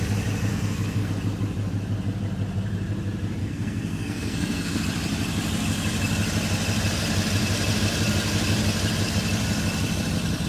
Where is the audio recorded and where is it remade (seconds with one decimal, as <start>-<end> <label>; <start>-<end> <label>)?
0.0-0.5 recorded; 0.5-1.1 remade; 1.1-3.4 recorded; 3.4-4.8 remade; 4.8-10.5 recorded

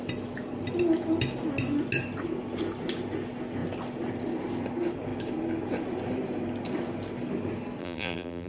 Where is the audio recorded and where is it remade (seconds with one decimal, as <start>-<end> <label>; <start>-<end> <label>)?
0.0-7.8 recorded; 7.8-8.5 remade